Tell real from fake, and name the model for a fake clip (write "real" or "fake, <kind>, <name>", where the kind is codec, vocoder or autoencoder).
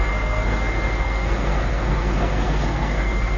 fake, codec, SNAC